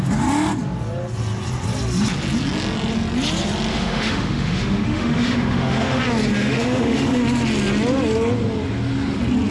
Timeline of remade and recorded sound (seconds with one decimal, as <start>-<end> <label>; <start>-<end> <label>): 0.0-3.7 recorded; 3.7-6.0 remade; 6.0-6.4 recorded; 6.4-7.2 remade; 7.2-9.5 recorded